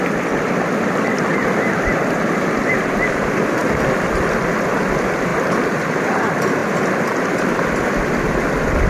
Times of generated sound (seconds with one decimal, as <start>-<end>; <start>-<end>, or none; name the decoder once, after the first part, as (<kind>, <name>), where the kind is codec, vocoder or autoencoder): 0.0-6.6 (vocoder, BigVGAN v2); 7.4-8.9